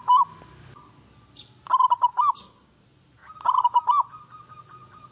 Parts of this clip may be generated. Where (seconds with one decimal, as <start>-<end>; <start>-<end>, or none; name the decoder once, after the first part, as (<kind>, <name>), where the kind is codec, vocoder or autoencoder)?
2.1-2.8 (codec, DAC)